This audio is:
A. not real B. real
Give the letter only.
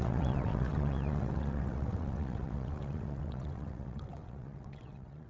A